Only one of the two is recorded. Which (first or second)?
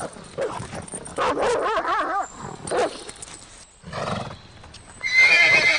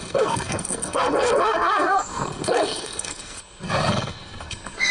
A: first